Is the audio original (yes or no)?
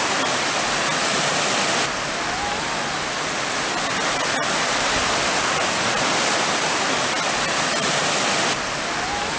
yes